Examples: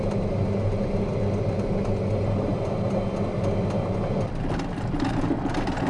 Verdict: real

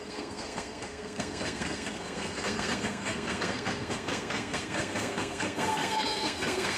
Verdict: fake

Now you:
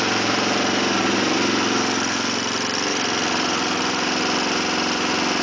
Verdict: real